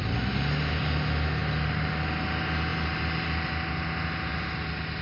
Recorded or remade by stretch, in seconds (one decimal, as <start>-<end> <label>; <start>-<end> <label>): 0.0-5.0 recorded